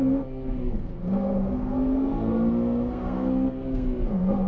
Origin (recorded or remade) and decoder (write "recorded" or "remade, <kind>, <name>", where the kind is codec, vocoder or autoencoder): remade, codec, SNAC